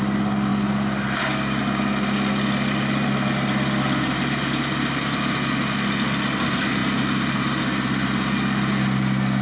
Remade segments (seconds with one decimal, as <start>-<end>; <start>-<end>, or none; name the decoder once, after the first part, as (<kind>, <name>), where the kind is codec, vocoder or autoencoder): 6.8-7.6 (vocoder, BigVGAN v2)